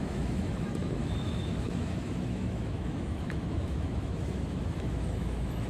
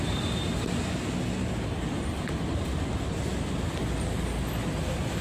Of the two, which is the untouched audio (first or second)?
second